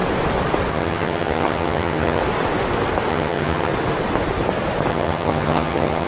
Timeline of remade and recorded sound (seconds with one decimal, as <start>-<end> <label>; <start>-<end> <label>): 0.0-0.7 recorded; 0.7-2.2 remade; 2.2-3.1 recorded; 3.1-3.7 remade; 3.7-4.9 recorded; 4.9-6.1 remade